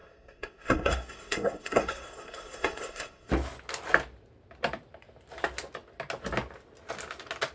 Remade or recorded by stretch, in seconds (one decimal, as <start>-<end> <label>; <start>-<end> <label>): 0.0-3.3 remade; 3.3-7.5 recorded